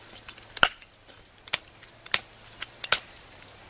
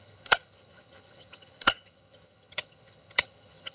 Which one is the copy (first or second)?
second